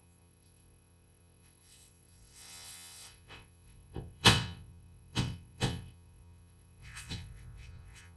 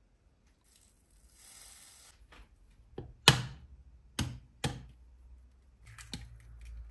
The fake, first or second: first